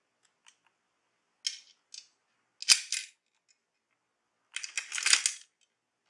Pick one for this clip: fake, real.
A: real